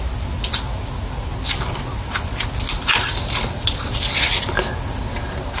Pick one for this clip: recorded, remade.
recorded